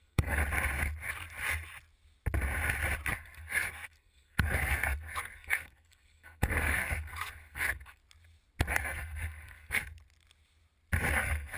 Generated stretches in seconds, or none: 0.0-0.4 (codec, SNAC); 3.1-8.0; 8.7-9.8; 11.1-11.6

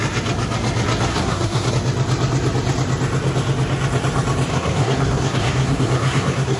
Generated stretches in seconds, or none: 1.1-1.7 (codec, SNAC); 4.5-6.6

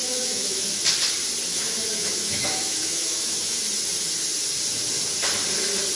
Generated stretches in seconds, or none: 0.0-0.8 (autoencoder, DAC-VAE); 1.5-3.6

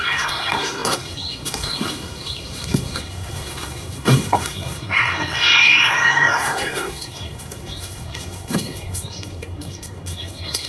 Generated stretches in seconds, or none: 0.0-10.7 (codec, SNAC)

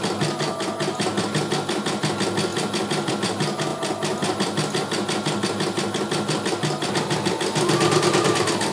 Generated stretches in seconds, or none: none

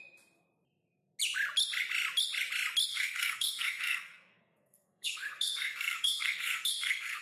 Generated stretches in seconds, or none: 2.9-7.2 (codec, SNAC)

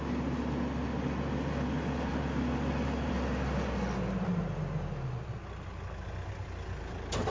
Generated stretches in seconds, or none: none